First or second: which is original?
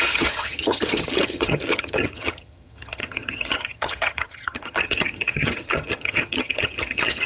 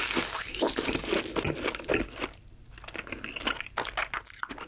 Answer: second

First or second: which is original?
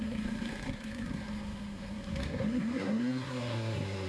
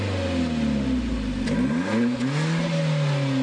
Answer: second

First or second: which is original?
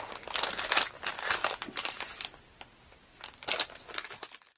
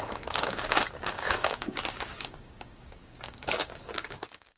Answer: first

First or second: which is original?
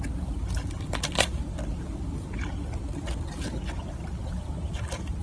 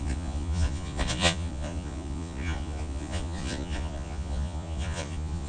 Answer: first